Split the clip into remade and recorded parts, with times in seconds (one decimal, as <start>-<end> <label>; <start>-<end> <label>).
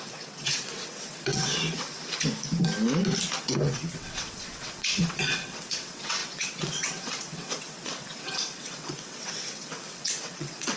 0.0-2.0 remade; 2.0-3.4 recorded; 3.4-10.8 remade